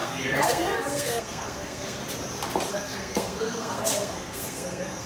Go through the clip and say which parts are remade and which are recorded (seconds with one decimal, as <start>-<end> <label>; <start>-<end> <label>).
0.0-2.0 remade; 2.0-2.7 recorded; 2.7-5.1 remade